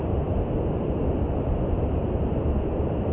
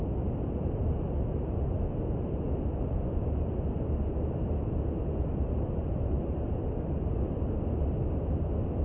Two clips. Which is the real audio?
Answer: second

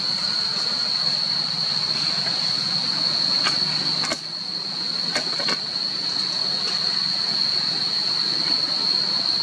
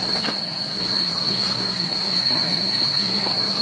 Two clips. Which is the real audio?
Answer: first